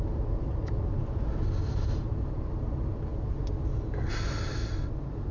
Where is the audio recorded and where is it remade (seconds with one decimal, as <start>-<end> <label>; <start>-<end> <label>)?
0.0-5.3 recorded